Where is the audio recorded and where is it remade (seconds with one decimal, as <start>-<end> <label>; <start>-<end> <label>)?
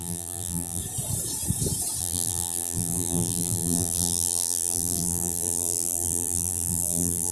0.0-0.8 remade; 0.8-2.0 recorded; 2.0-7.3 remade